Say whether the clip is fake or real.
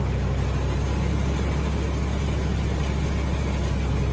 real